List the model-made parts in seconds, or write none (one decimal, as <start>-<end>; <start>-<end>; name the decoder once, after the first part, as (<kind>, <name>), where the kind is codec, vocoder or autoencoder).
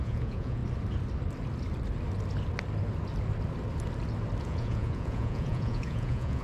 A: 0.0-0.6 (vocoder, Vocos); 4.4-6.4